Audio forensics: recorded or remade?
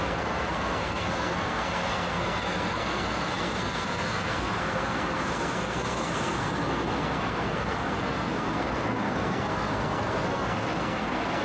remade